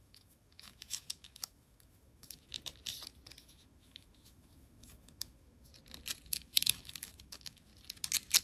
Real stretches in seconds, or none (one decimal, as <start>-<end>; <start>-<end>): 2.5-3.4; 5.7-6.3; 7.7-8.4